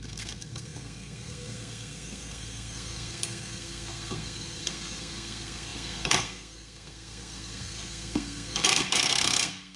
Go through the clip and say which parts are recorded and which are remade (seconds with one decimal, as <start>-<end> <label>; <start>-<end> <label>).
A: 0.0-9.8 remade